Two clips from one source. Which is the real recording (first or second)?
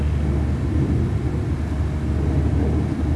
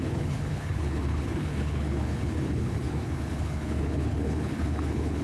first